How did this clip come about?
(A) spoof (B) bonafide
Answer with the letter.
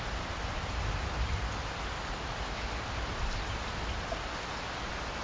B